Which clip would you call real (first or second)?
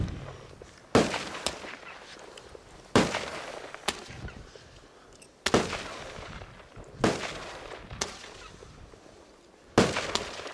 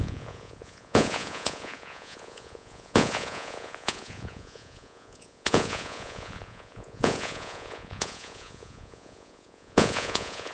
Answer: first